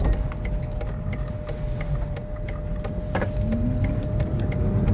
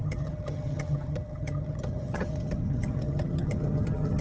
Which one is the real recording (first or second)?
first